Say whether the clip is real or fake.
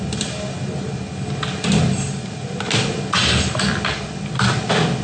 real